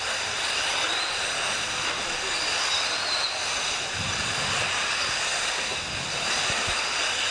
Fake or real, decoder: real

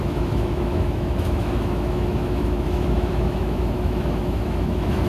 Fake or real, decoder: fake, autoencoder, DAC-VAE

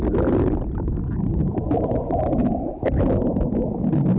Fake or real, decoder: real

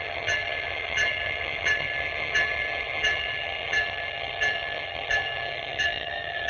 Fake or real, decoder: fake, vocoder, HiFi-GAN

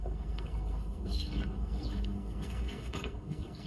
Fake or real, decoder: fake, codec, SNAC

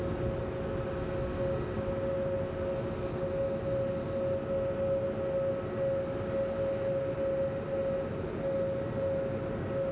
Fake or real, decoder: real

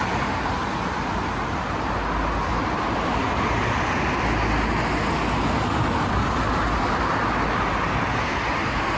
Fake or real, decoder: real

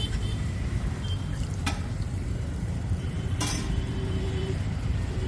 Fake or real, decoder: fake, vocoder, BigVGAN v2